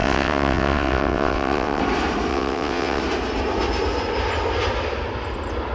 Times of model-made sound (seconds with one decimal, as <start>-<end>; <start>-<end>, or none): 0.0-1.8; 2.3-3.0